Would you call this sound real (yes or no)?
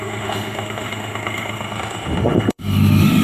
no